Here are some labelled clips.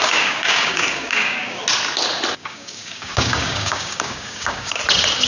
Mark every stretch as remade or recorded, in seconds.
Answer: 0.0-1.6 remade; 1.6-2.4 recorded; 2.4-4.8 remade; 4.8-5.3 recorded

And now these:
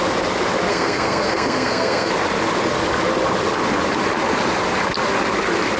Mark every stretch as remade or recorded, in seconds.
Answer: 0.0-0.7 recorded; 0.7-2.1 remade; 2.1-5.8 recorded

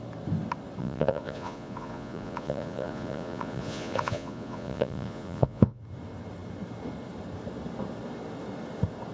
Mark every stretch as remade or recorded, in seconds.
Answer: 0.0-0.8 recorded; 0.8-5.8 remade; 5.8-9.1 recorded

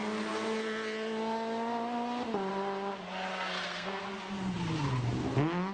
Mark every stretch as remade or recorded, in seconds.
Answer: 0.0-3.3 recorded; 3.3-4.0 remade; 4.0-5.7 recorded